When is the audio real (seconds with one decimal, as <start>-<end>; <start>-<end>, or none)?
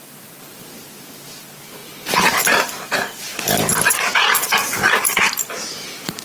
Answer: none